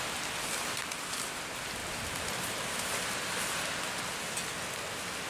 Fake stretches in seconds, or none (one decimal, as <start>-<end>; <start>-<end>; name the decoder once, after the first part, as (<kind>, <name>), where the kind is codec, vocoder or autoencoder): 1.8-4.0 (vocoder, BigVGAN v2)